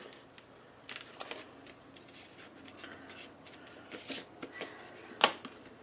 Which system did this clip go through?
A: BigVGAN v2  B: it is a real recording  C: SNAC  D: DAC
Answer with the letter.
B